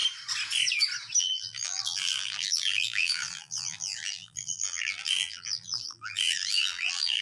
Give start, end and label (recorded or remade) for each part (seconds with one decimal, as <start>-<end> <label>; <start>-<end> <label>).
0.0-1.2 recorded; 1.2-7.2 remade